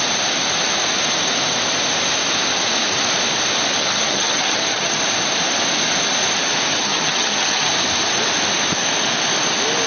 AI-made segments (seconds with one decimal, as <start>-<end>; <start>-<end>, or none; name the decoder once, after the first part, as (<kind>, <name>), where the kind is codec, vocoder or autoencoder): 3.8-5.0 (vocoder, HiFi-GAN); 6.8-7.7